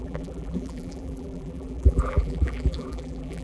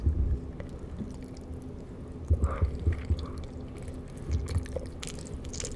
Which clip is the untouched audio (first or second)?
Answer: second